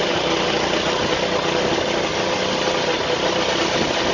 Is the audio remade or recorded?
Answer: recorded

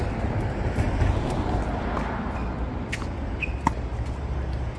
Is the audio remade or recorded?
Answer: recorded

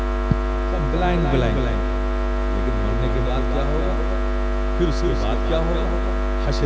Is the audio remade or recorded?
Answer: recorded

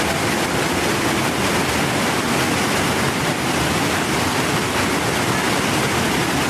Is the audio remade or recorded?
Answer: recorded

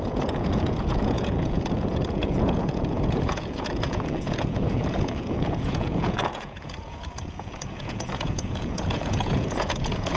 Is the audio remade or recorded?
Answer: remade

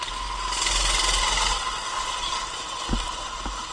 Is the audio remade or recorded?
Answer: recorded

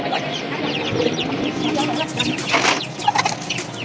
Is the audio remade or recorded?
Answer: recorded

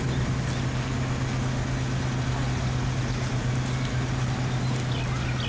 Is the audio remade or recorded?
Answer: recorded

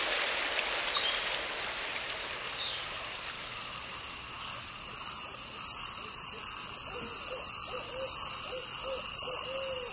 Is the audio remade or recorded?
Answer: recorded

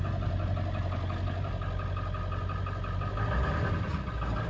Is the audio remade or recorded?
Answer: recorded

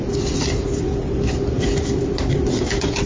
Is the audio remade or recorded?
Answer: recorded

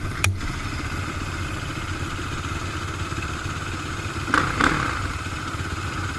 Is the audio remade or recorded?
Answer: recorded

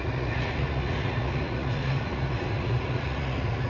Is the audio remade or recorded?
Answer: remade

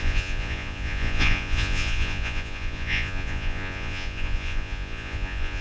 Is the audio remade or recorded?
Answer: remade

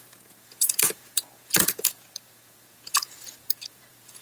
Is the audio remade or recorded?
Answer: remade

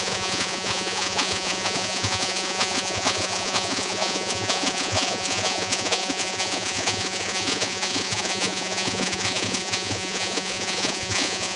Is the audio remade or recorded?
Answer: remade